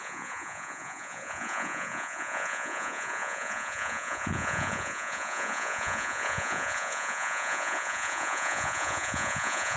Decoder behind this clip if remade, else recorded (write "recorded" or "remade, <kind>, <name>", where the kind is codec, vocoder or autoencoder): remade, vocoder, Vocos